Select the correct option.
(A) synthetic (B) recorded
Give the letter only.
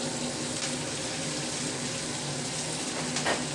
B